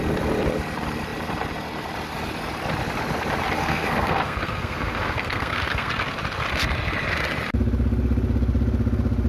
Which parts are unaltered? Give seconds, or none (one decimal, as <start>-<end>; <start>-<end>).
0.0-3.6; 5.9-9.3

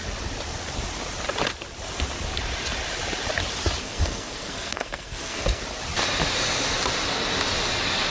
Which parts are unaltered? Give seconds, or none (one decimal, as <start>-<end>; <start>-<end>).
0.0-3.8; 5.6-8.1

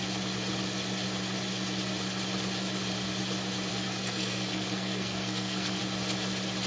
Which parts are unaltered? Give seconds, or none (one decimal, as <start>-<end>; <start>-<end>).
0.0-3.7; 5.8-6.7

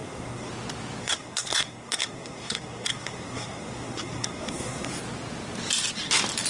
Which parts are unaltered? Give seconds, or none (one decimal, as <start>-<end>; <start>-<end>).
0.5-1.0; 4.9-6.5